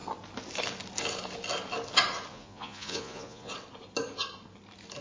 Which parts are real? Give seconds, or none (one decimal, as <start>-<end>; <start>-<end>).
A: 0.0-2.3; 3.5-5.0